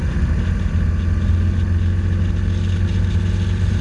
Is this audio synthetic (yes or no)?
no